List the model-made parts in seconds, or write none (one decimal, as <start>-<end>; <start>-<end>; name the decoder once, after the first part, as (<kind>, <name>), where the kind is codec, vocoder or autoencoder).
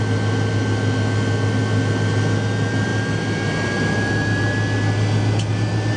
none